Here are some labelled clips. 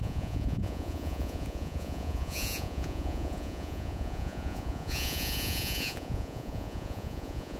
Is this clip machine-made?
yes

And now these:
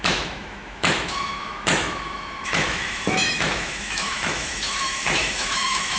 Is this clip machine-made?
yes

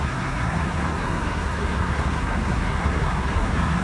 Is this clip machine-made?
yes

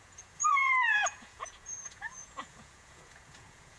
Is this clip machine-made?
yes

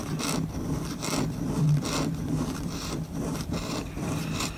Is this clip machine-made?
yes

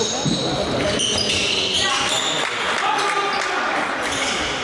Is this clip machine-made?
no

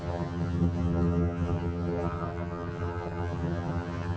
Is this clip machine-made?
yes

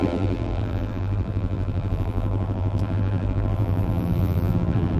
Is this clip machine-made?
yes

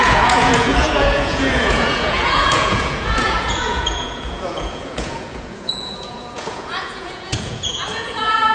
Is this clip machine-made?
yes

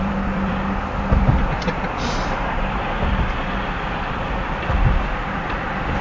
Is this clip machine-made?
yes